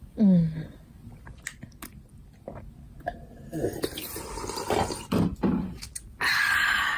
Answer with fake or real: real